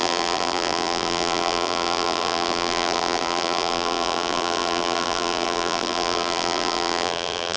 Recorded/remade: remade